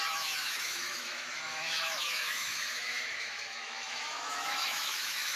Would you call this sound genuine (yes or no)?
no